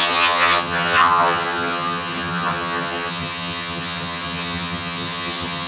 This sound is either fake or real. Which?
fake